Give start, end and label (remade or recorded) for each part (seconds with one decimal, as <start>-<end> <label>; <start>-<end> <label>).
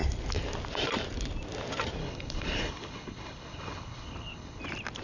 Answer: 0.0-2.0 recorded; 2.0-4.6 remade; 4.6-5.0 recorded